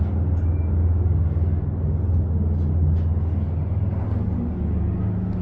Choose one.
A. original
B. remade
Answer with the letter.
A